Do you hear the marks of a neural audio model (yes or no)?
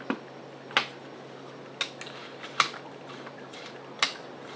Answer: no